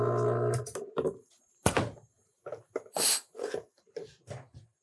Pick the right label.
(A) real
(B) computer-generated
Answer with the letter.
A